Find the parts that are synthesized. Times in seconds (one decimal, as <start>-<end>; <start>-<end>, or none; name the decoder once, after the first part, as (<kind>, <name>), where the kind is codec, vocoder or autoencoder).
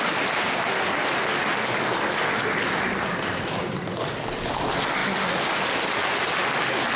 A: none